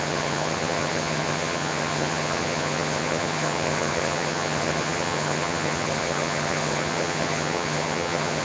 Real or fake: fake